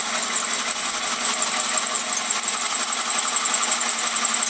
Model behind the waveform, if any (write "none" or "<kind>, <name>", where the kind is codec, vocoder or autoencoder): none